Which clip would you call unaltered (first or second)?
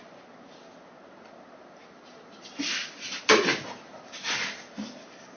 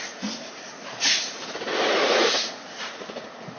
first